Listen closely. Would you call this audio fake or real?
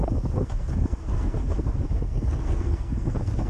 fake